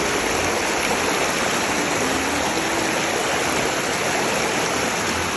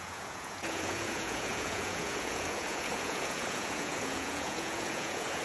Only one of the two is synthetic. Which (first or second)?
second